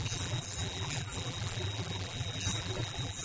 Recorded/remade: remade